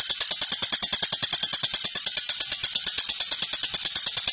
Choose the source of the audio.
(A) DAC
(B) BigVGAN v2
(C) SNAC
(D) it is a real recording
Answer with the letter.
D